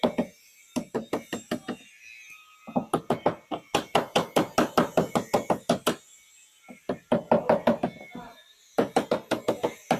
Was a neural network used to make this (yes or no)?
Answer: no